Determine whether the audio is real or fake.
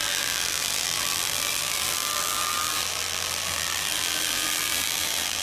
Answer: fake